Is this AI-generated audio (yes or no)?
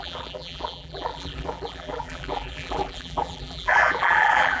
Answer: yes